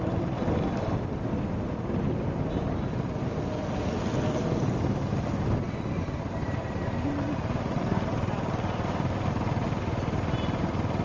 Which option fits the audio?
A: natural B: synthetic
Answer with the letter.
A